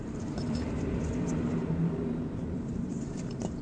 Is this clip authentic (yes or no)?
no